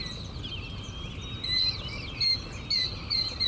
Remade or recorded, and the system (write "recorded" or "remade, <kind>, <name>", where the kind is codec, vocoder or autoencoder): recorded